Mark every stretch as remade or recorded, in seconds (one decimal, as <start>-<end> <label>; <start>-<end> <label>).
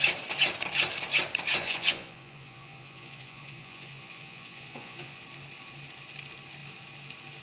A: 0.0-1.6 recorded; 1.6-5.2 remade; 5.2-7.4 recorded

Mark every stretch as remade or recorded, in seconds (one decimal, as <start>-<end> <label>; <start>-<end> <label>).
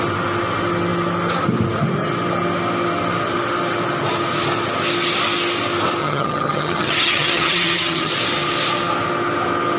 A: 0.0-6.0 recorded; 6.0-8.1 remade; 8.1-9.8 recorded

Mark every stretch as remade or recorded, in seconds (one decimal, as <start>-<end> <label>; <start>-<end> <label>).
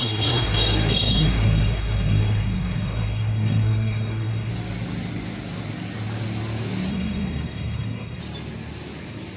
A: 0.0-4.5 remade; 4.5-6.9 recorded; 6.9-8.2 remade; 8.2-9.4 recorded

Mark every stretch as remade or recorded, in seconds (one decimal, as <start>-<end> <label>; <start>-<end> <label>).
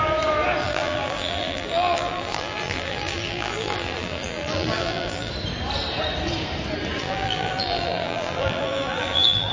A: 0.0-0.6 recorded; 0.6-5.3 remade; 5.3-7.0 recorded; 7.0-9.5 remade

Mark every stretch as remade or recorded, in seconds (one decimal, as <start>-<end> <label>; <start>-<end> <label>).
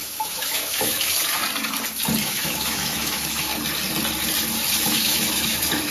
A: 0.0-1.4 remade; 1.4-2.2 recorded; 2.2-3.5 remade; 3.5-4.8 recorded; 4.8-5.9 remade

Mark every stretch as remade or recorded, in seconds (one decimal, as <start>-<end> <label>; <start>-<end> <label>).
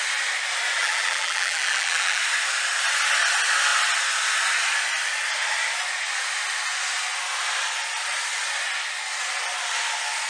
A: 0.0-0.8 recorded; 0.8-2.2 remade; 2.2-10.3 recorded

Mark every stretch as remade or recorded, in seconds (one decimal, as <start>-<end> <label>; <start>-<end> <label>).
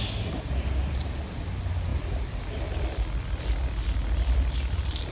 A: 0.0-5.1 recorded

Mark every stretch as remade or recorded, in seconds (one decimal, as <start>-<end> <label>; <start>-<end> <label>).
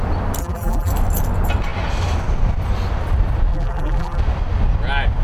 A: 0.0-0.4 recorded; 0.4-0.9 remade; 0.9-3.5 recorded; 3.5-4.2 remade; 4.2-5.2 recorded